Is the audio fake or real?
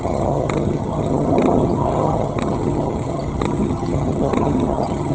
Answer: fake